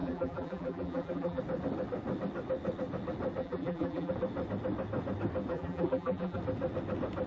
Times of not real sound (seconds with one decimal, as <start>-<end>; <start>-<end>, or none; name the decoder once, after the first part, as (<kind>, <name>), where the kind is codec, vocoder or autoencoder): 0.0-1.4 (vocoder, BigVGAN v2); 3.4-4.1; 5.5-6.4